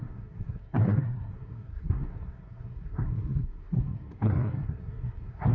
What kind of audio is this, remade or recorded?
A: remade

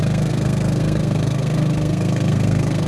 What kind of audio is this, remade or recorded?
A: remade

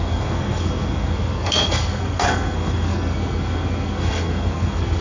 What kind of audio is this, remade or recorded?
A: remade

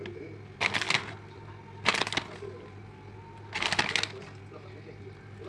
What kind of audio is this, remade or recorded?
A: recorded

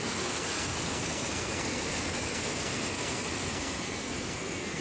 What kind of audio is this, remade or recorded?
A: remade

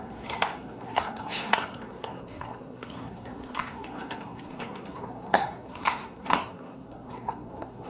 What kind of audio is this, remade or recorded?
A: remade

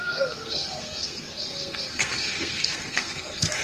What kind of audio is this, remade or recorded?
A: remade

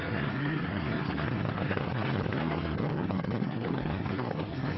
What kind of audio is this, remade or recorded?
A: remade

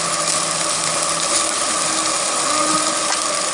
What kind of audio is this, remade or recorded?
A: recorded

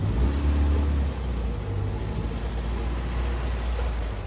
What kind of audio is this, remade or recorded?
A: recorded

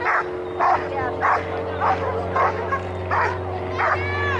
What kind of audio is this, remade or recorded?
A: recorded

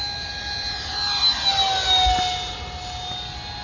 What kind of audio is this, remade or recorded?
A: recorded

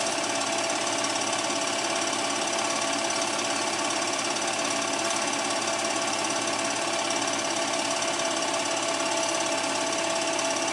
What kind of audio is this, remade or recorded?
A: recorded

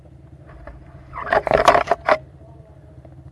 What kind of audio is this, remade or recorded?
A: recorded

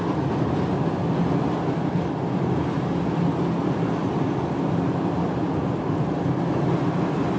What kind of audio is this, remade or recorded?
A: recorded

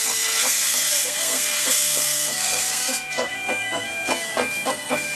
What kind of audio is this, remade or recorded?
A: remade